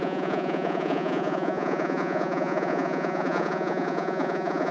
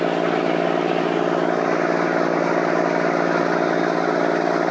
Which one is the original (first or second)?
second